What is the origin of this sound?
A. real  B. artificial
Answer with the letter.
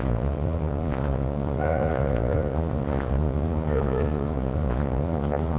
B